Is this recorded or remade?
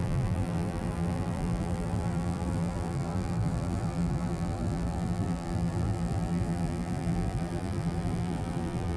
remade